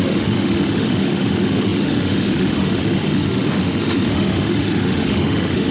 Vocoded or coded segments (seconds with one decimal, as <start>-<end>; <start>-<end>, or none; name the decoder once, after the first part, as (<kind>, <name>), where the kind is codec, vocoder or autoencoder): 0.0-5.7 (autoencoder, DAC-VAE)